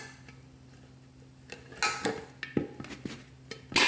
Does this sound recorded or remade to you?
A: recorded